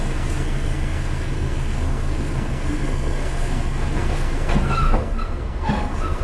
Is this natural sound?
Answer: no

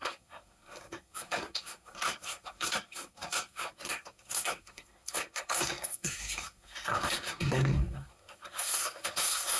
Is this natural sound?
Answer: no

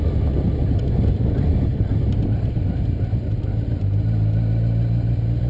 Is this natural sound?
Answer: yes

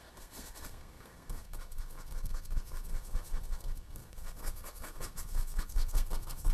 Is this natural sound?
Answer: no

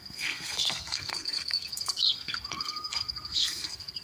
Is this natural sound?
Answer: no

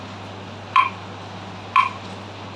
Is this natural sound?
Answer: yes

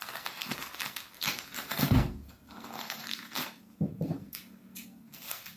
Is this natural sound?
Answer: no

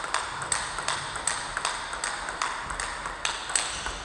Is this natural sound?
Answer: yes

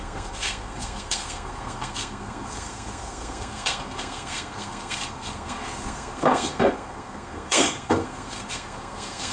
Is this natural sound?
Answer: no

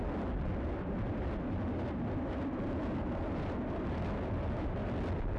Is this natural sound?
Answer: yes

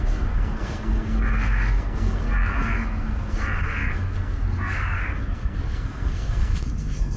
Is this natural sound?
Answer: no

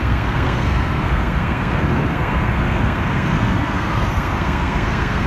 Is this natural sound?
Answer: no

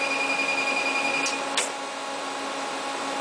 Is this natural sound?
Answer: yes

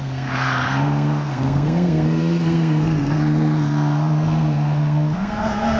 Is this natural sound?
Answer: no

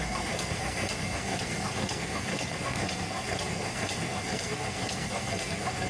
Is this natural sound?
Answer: no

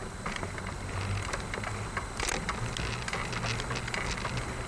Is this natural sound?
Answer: yes